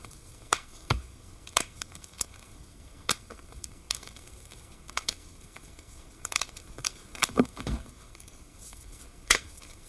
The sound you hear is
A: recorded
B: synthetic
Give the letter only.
B